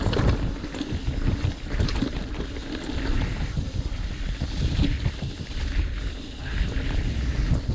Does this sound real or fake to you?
real